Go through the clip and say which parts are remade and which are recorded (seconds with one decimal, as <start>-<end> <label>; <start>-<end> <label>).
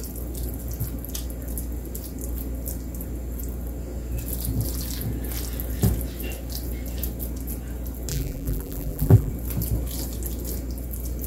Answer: 0.0-8.1 recorded; 8.1-9.3 remade; 9.3-11.3 recorded